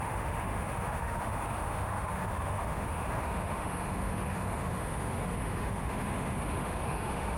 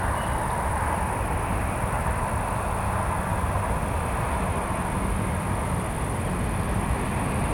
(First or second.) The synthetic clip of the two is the first